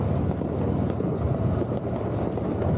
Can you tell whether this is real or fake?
real